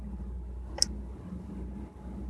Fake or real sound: real